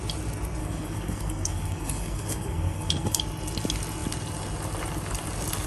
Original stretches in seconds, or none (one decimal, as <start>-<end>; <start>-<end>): 0.0-0.6; 3.2-5.7